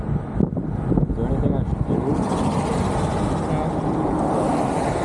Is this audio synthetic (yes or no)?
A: no